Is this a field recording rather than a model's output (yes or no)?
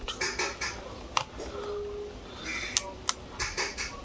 yes